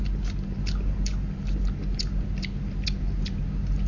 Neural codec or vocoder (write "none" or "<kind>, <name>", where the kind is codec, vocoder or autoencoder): none